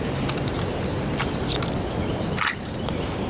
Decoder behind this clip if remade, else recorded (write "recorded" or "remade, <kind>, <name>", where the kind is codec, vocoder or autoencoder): remade, vocoder, BigVGAN v2